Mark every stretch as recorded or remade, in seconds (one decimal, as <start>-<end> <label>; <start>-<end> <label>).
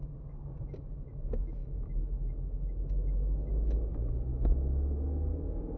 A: 0.0-1.6 recorded; 1.6-3.9 remade; 3.9-4.3 recorded; 4.3-5.8 remade